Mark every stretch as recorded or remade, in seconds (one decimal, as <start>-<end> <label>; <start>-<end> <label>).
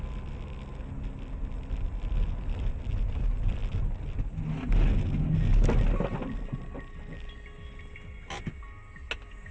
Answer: 0.0-9.5 recorded